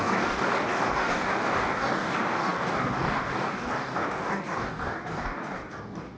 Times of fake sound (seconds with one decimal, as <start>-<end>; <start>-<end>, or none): 0.0-6.2